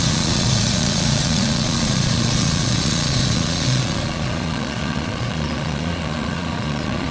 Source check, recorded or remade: remade